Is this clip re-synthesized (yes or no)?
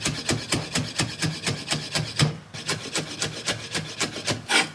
no